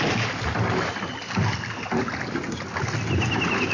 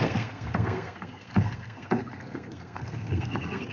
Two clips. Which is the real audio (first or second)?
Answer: first